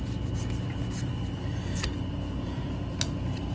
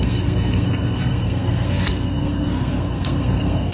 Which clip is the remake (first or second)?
second